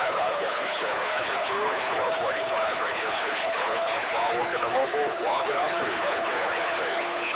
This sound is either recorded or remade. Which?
remade